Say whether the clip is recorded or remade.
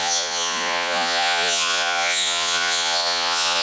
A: remade